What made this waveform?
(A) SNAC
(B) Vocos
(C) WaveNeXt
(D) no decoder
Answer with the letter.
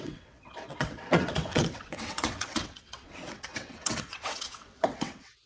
C